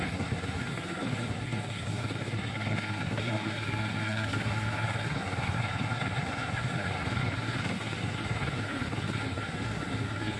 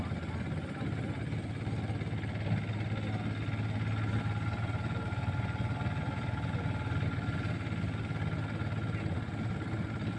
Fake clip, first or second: first